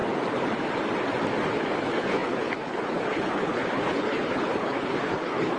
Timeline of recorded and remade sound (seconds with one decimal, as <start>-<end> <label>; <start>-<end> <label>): 0.0-1.5 recorded; 1.5-5.6 remade